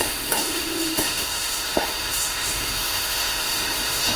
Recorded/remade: remade